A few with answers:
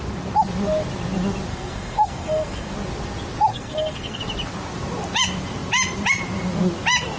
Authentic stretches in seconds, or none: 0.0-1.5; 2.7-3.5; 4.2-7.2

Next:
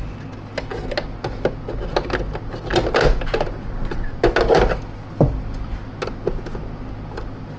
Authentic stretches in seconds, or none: 0.0-7.6

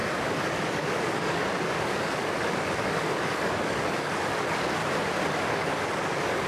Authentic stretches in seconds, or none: 4.8-5.3

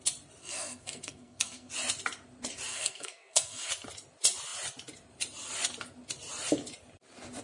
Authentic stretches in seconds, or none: 0.0-0.4; 1.7-2.7; 3.7-7.4

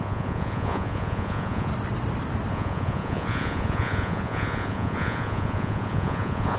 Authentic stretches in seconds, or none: 1.7-2.5

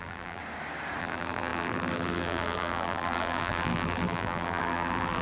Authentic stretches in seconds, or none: 0.4-1.0

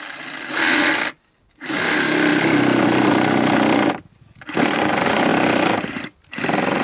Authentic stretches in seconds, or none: 0.0-6.8

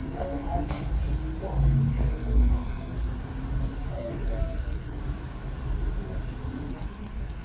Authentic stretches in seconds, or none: 0.9-1.9; 3.2-3.9; 5.0-6.7